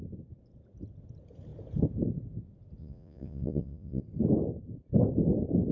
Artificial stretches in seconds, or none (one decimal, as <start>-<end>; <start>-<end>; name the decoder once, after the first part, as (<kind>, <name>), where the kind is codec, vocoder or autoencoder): 2.8-4.0 (vocoder, Vocos)